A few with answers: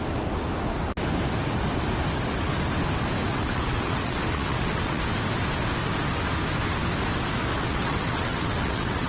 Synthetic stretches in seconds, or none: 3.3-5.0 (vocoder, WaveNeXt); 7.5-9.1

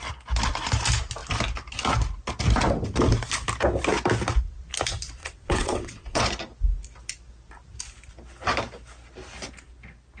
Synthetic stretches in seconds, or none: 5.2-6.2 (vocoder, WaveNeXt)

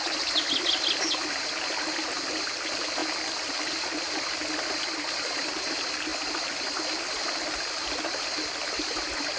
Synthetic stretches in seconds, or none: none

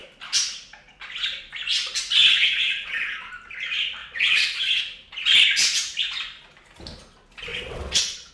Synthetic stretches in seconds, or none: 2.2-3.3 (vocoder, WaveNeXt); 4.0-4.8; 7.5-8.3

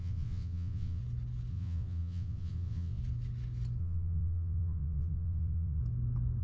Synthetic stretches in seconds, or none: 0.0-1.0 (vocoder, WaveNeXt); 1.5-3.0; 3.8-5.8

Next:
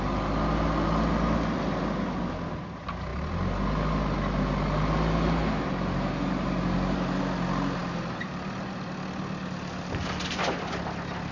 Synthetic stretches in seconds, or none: none

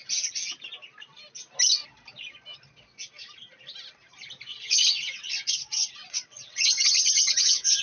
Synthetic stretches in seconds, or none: 4.5-7.8 (vocoder, WaveNeXt)

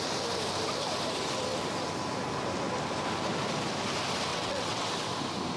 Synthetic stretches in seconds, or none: 4.3-4.9 (vocoder, WaveNeXt)